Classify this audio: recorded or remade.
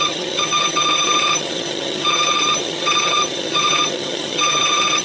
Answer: remade